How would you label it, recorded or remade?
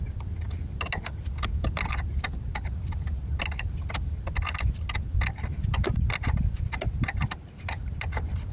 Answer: recorded